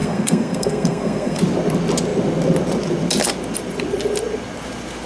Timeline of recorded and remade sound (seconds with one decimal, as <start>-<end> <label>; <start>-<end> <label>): 0.0-1.4 remade; 1.4-5.1 recorded

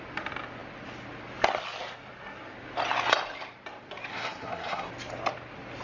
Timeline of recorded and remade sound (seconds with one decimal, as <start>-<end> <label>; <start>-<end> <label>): 0.0-4.1 recorded; 4.1-4.9 remade; 4.9-5.8 recorded

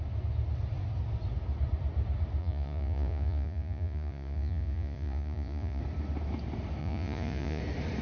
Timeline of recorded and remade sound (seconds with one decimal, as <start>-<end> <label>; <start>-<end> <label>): 0.0-2.4 recorded; 2.4-5.8 remade; 5.8-6.8 recorded; 6.8-7.6 remade; 7.6-8.0 recorded

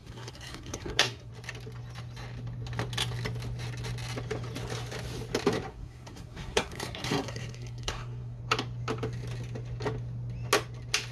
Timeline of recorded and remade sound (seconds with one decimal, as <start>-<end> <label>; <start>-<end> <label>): 0.0-1.3 remade; 1.3-5.7 recorded; 5.7-8.4 remade; 8.4-11.1 recorded

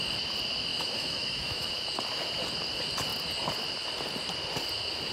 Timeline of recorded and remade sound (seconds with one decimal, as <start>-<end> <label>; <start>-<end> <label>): 0.0-0.7 recorded; 0.7-1.7 remade; 1.7-5.1 recorded

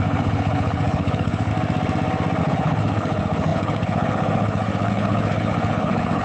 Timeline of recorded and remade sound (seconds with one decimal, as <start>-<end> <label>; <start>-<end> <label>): 0.0-1.5 remade; 1.5-2.4 recorded; 2.4-6.2 remade